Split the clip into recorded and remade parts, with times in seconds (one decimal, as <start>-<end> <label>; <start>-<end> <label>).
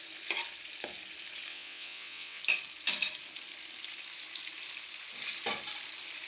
0.0-1.5 recorded; 1.5-2.4 remade; 2.4-6.3 recorded